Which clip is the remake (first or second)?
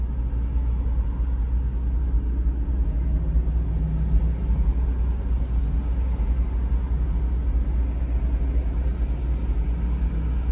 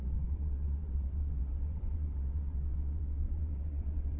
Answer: second